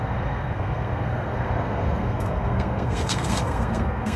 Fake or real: fake